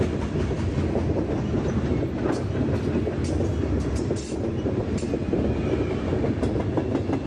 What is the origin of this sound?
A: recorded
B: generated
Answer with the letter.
A